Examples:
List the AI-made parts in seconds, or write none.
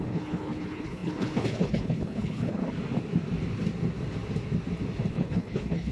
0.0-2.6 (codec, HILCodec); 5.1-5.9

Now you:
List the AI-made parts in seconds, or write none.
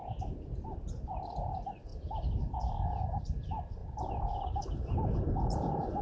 none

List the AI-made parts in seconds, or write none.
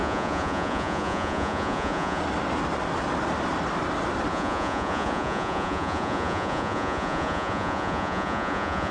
0.0-2.2 (vocoder, Vocos); 4.3-8.9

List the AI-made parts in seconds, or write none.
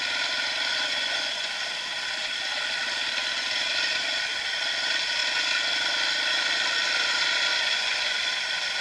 0.7-1.5 (vocoder, Vocos); 7.5-8.3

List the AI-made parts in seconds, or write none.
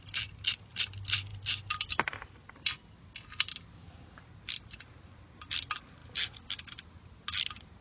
none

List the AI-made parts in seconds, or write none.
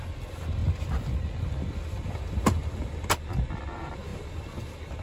none